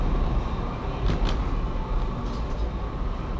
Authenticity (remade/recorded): recorded